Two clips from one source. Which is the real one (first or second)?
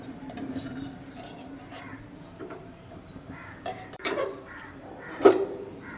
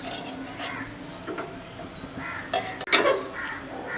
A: second